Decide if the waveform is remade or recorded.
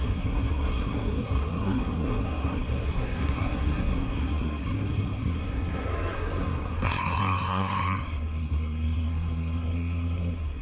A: remade